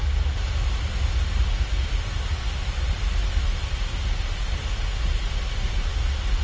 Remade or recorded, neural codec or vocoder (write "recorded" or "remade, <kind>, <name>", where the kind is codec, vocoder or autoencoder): recorded